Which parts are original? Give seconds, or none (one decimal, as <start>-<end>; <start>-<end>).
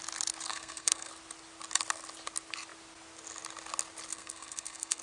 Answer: 0.0-0.5; 1.1-4.1